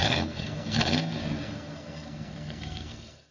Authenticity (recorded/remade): remade